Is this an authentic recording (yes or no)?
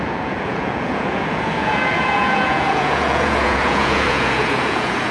no